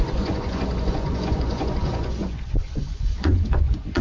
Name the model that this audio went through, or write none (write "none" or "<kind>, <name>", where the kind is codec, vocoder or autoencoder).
vocoder, Vocos